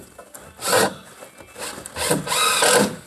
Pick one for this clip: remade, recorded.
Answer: recorded